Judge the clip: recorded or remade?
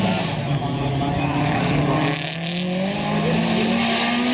recorded